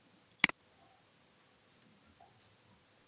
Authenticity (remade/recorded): recorded